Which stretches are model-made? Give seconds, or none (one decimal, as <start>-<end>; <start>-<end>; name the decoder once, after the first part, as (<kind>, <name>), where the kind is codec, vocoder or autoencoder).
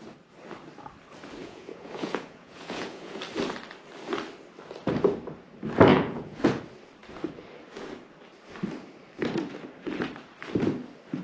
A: 1.4-3.2 (vocoder, Vocos); 5.9-6.6